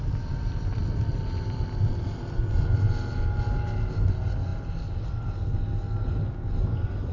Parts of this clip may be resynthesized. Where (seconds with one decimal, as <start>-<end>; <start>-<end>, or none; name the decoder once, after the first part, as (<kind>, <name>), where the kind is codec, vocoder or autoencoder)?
none